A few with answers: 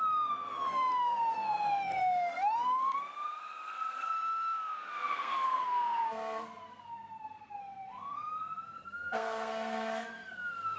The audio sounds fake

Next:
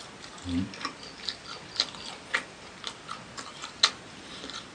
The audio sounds real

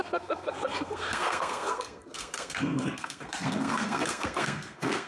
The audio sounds fake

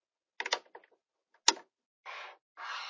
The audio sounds real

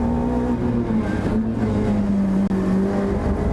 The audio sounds real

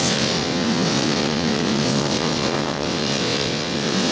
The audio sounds fake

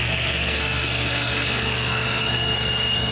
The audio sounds fake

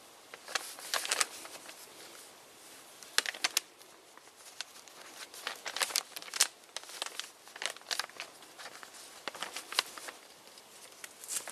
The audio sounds real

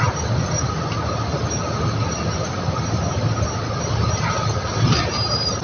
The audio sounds fake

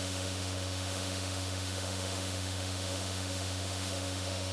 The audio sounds fake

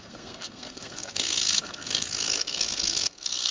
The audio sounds fake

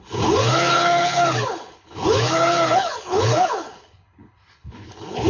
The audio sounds fake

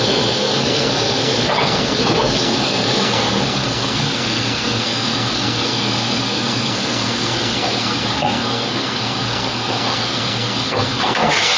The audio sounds fake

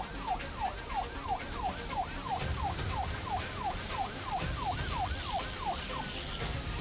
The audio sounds fake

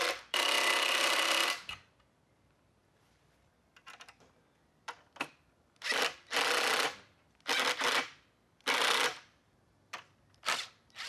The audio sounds fake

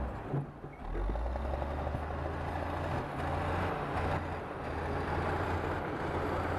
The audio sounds real